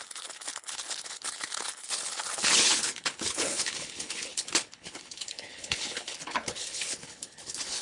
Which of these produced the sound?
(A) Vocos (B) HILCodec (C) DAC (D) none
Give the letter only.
B